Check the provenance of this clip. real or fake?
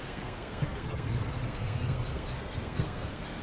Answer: fake